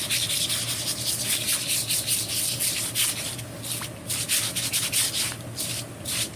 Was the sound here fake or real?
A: real